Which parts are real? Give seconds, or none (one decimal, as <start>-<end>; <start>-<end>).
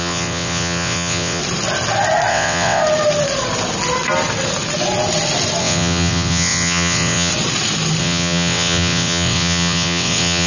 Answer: 1.4-2.3; 2.8-5.6; 7.3-8.0